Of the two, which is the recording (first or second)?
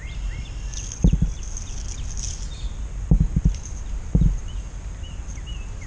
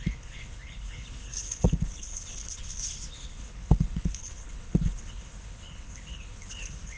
first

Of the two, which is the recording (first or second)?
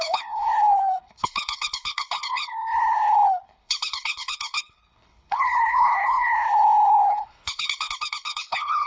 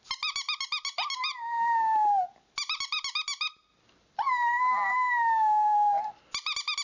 second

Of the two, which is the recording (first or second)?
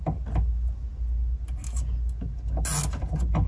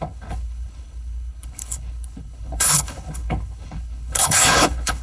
first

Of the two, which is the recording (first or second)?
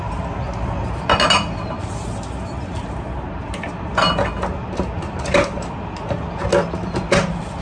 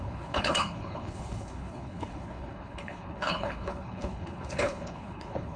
first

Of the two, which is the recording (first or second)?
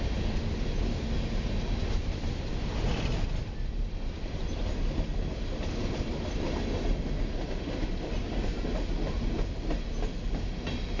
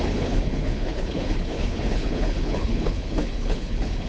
first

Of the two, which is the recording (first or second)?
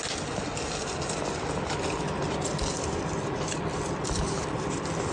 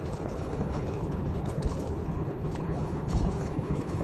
first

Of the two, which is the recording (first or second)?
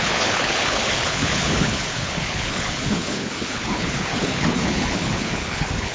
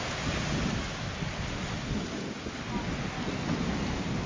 second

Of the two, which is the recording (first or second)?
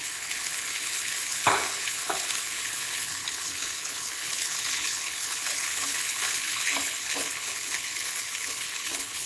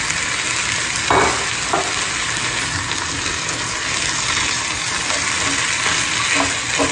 second